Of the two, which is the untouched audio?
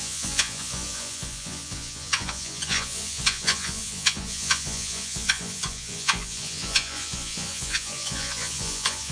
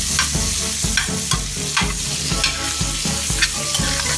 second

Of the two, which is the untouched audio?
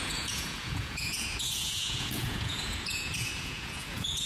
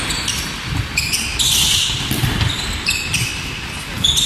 second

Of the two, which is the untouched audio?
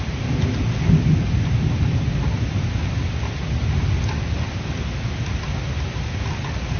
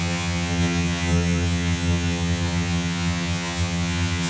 first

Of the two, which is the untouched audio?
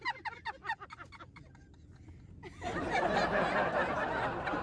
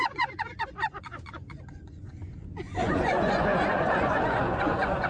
first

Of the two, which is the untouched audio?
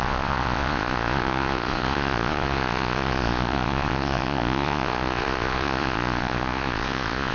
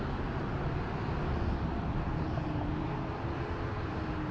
second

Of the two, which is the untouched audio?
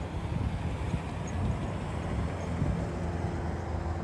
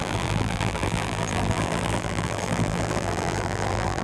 first